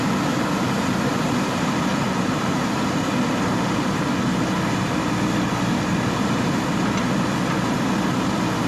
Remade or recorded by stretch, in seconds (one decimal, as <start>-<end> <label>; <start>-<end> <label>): 0.0-1.9 recorded; 1.9-2.8 remade; 2.8-8.7 recorded